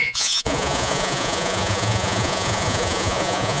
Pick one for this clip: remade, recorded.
remade